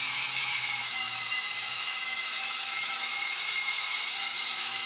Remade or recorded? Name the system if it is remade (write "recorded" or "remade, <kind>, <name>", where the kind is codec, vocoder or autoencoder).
remade, autoencoder, DAC-VAE